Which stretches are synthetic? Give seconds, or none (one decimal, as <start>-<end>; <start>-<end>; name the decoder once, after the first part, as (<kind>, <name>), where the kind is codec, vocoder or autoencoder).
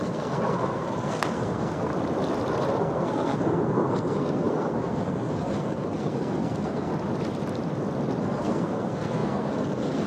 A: 0.0-1.9 (codec, SNAC); 2.8-6.9; 8.2-10.1